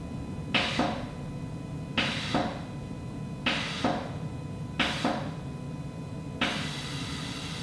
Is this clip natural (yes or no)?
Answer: yes